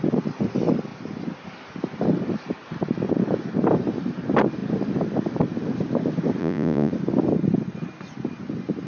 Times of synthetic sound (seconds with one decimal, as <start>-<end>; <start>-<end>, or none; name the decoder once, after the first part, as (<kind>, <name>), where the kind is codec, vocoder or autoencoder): 6.4-6.9 (vocoder, Vocos)